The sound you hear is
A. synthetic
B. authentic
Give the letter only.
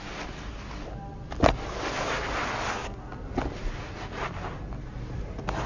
B